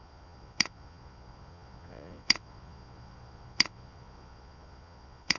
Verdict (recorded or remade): remade